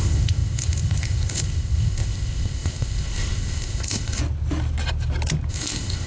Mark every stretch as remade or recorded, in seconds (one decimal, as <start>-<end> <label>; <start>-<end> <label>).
0.0-4.2 remade; 4.2-5.5 recorded; 5.5-6.1 remade